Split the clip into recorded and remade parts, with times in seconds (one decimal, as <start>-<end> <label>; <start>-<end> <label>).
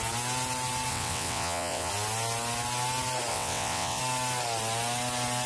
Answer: 0.0-0.9 recorded; 0.9-1.9 remade; 1.9-3.3 recorded; 3.3-4.0 remade; 4.0-5.5 recorded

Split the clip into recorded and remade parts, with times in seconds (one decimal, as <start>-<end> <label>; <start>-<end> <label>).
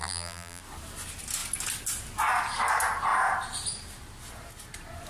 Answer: 0.0-0.6 remade; 0.6-5.1 recorded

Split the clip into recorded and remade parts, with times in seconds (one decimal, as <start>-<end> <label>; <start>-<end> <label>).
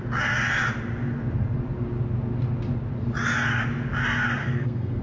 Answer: 0.0-4.4 recorded; 4.4-5.0 remade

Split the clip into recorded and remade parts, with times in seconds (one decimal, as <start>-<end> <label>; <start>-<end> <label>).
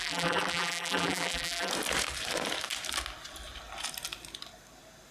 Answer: 0.0-1.7 remade; 1.7-5.1 recorded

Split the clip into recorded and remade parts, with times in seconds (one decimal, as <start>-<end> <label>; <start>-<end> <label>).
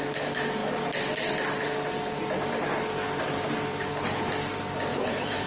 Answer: 0.0-4.9 recorded; 4.9-5.5 remade